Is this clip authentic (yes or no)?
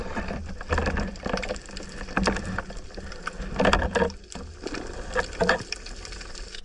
yes